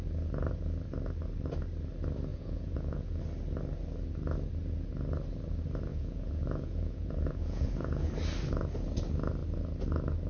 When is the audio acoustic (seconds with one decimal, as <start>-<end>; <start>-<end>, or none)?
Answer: 0.0-2.3; 3.2-5.9; 8.1-10.3